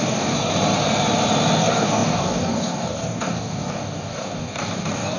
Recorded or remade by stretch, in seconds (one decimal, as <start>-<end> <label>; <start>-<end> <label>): 0.0-0.5 remade; 0.5-1.6 recorded; 1.6-5.2 remade